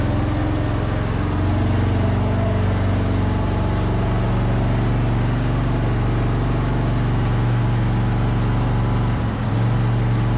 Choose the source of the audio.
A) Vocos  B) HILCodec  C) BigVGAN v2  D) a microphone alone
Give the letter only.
D